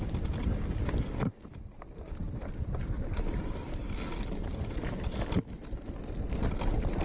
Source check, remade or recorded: recorded